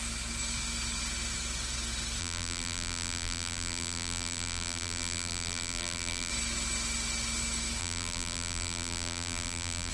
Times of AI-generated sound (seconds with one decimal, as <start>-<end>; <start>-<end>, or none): 2.2-6.3; 7.8-9.9